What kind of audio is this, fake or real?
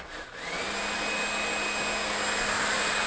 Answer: real